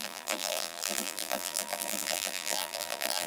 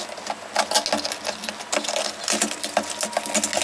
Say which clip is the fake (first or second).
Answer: first